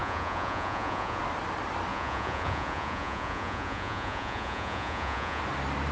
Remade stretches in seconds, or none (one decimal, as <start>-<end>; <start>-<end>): 0.0-1.2; 1.9-5.4